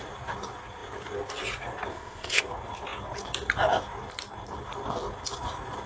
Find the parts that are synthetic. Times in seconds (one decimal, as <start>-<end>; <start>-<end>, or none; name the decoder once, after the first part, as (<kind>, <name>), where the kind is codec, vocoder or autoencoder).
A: 1.9-2.4 (codec, ZipCodec)